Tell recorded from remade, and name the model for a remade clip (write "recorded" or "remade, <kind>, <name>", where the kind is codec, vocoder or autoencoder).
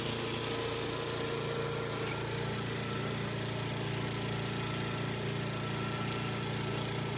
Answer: recorded